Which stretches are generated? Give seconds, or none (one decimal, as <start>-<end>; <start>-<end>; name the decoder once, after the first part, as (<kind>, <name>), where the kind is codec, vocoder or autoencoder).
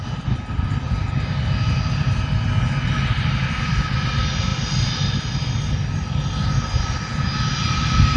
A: none